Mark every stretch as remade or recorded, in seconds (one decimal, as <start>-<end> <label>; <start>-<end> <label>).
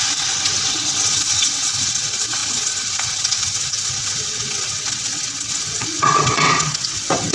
0.0-7.3 remade